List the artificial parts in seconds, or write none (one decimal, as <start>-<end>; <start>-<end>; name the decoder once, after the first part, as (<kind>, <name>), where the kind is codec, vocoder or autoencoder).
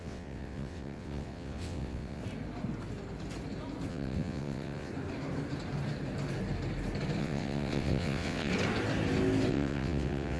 0.0-2.2 (vocoder, WaveNeXt); 3.9-4.9; 7.2-8.5; 9.5-10.4